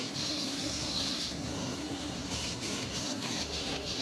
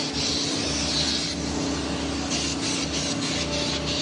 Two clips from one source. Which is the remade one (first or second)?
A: first